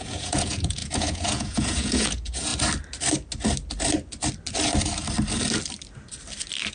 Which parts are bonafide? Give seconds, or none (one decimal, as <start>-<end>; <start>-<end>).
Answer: 2.5-6.7